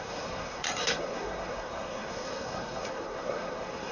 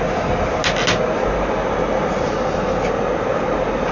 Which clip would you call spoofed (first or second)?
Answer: first